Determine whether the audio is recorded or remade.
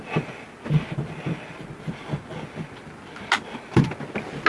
recorded